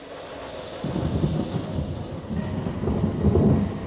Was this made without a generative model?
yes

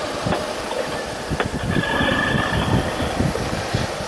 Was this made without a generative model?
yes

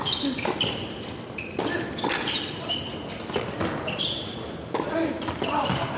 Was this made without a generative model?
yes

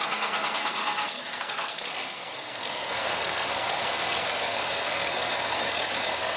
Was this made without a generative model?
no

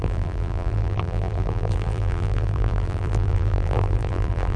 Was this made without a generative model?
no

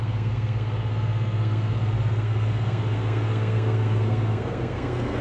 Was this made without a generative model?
no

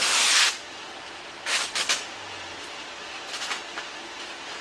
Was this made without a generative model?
yes